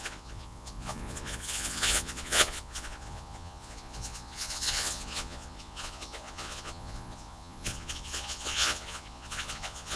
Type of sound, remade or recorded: remade